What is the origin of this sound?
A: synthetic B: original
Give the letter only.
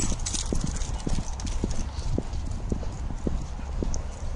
B